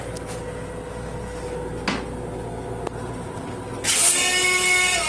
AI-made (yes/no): no